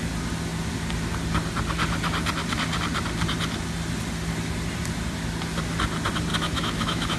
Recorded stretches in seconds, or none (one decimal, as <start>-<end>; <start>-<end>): 0.0-6.3